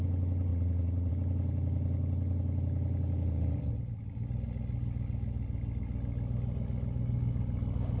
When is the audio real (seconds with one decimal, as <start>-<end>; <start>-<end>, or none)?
0.0-0.5; 1.1-8.0